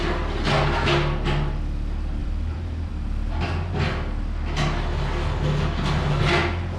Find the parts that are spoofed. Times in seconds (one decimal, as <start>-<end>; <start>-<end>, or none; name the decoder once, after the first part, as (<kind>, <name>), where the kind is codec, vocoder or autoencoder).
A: 2.2-2.9 (vocoder, BigVGAN v2)